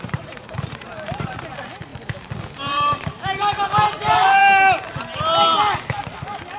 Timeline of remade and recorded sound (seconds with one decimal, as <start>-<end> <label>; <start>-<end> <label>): 0.0-1.9 remade; 1.9-2.6 recorded; 2.6-4.4 remade; 4.4-6.0 recorded; 6.0-6.6 remade